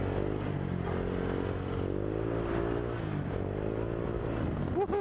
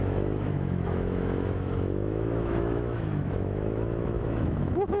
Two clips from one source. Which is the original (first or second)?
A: first